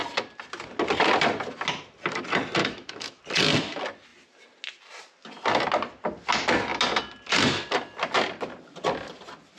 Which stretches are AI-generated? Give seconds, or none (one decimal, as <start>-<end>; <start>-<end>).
2.6-3.2